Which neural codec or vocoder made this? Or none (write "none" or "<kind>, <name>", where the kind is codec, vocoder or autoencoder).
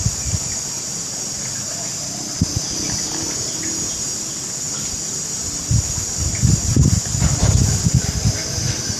none